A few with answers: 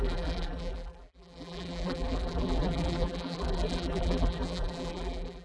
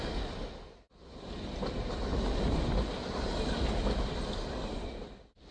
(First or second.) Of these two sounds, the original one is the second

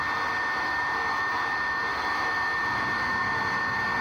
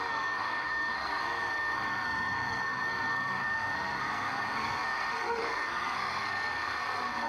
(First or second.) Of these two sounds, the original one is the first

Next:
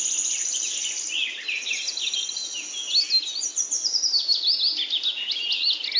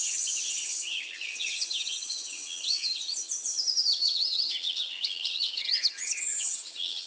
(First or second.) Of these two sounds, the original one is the first